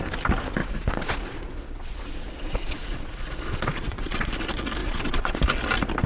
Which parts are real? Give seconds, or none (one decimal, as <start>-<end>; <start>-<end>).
0.0-0.6; 4.3-4.8; 5.4-6.1